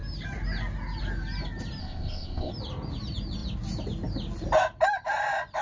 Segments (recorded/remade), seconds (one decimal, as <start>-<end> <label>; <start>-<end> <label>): 0.0-1.8 recorded; 1.8-2.5 remade; 2.5-5.6 recorded